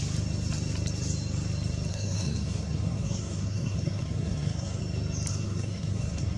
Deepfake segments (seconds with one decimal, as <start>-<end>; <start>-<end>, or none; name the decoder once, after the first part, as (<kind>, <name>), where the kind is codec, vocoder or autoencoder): 1.9-4.8 (codec, SNAC); 5.3-6.4

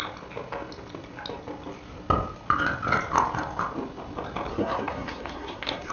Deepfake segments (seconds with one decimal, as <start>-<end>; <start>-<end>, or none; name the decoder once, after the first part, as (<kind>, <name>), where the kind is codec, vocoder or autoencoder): 4.5-5.9 (codec, SNAC)

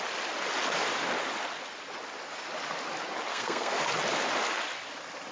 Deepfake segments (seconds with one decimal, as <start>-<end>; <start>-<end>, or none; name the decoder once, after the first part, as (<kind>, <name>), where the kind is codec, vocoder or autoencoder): 3.3-3.8 (codec, SNAC)

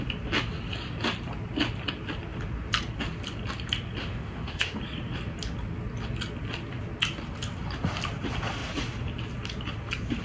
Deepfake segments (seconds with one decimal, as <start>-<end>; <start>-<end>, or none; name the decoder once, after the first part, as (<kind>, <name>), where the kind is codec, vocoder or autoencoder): 4.0-4.8 (autoencoder, DAC-VAE)

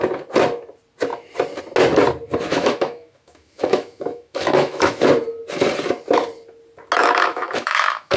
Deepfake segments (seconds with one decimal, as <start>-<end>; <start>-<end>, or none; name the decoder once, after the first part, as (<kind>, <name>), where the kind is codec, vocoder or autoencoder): 2.5-5.1 (autoencoder, DAC-VAE); 7.0-8.2

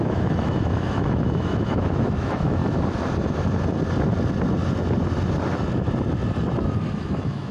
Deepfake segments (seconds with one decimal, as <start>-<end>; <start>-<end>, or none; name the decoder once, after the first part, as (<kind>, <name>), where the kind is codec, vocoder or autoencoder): 0.0-2.6 (autoencoder, DAC-VAE); 6.9-7.5

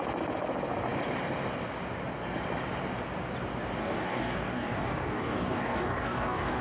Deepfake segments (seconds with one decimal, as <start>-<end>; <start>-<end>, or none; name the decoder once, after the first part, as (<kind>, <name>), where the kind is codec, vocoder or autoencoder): 3.8-6.6 (codec, DAC)

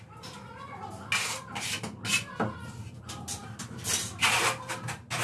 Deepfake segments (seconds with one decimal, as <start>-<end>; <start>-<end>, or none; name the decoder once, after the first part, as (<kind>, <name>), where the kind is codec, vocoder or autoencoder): none